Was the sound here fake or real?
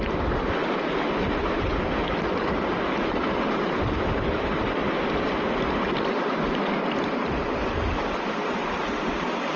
real